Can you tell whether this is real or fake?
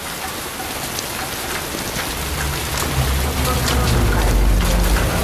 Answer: real